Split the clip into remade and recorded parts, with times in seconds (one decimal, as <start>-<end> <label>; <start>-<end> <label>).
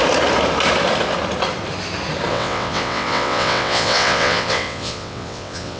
0.0-2.3 recorded; 2.3-5.8 remade